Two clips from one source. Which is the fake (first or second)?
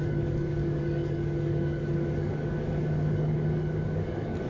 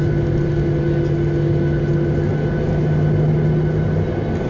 first